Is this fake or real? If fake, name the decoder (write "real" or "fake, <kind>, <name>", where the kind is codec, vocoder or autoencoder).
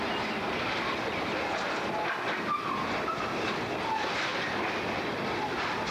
real